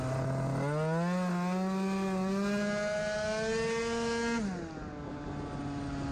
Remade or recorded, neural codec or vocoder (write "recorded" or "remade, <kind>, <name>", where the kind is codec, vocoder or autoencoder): recorded